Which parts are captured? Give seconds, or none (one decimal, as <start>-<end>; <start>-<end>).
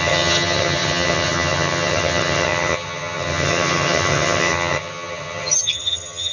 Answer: none